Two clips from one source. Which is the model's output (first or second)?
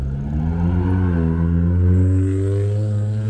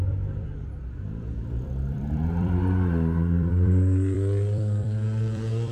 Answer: second